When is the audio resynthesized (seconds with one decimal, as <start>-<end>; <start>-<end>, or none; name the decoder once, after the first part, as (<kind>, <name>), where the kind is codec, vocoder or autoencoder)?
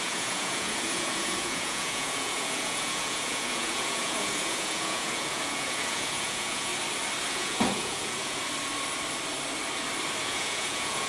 0.0-6.7 (vocoder, Vocos); 7.3-8.4; 10.2-11.1